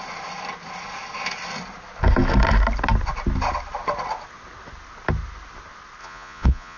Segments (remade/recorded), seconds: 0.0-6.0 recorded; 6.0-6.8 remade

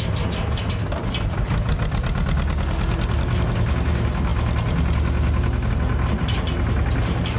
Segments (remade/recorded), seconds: 0.0-7.4 recorded

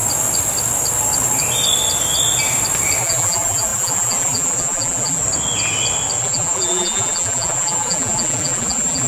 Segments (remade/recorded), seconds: 0.0-3.0 recorded; 3.0-5.2 remade; 5.2-6.2 recorded; 6.2-9.1 remade